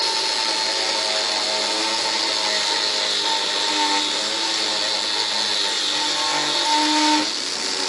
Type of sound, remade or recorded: recorded